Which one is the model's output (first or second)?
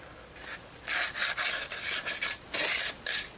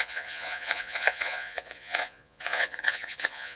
second